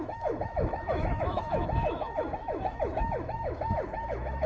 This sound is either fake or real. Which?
fake